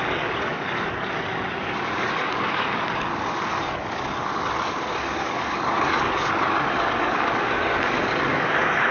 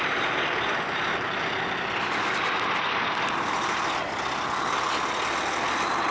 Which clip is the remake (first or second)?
first